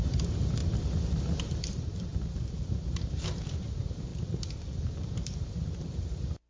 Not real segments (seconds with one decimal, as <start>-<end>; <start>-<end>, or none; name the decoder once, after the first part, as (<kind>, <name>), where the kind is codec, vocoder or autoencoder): 0.0-0.6 (vocoder, BigVGAN v2); 1.4-4.1; 4.8-6.5

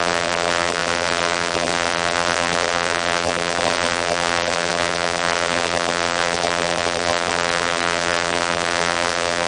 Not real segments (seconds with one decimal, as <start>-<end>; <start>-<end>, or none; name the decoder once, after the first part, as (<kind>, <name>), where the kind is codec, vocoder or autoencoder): 0.0-9.5 (vocoder, BigVGAN v2)

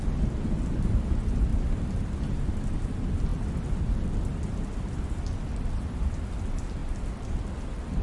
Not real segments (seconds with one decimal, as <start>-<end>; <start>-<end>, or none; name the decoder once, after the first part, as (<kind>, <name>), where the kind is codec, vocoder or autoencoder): 1.5-2.6 (vocoder, BigVGAN v2)

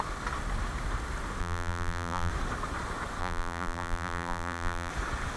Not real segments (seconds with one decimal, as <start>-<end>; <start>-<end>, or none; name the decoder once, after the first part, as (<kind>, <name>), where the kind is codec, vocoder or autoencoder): 1.4-2.3 (vocoder, BigVGAN v2); 3.2-4.9